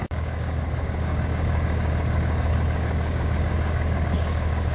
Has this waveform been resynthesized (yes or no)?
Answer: yes